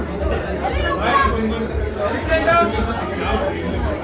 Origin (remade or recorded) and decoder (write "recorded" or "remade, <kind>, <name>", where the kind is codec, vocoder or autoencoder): recorded